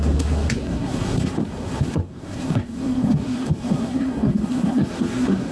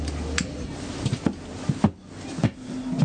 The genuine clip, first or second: second